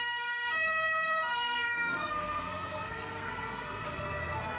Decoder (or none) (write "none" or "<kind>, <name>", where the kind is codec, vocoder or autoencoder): codec, SNAC